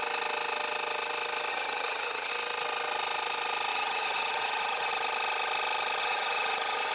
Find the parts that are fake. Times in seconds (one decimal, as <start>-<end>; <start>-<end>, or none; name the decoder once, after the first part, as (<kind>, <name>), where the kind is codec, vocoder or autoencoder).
1.5-2.3 (vocoder, HiFi-GAN); 3.7-4.9; 6.0-6.9